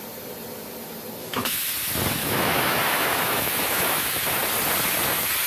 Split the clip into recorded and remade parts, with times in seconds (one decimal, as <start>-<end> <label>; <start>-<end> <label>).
0.0-1.2 recorded; 1.2-1.7 remade; 1.7-2.2 recorded; 2.2-4.4 remade; 4.4-5.5 recorded